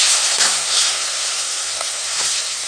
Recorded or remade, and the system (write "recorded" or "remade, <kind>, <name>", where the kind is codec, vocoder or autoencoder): remade, codec, SNAC